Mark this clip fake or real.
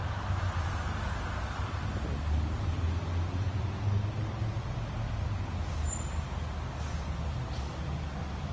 real